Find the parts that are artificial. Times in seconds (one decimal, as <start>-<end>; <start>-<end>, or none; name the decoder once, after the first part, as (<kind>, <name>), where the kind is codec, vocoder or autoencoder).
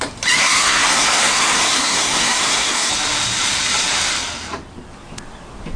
0.4-2.9 (codec, SNAC)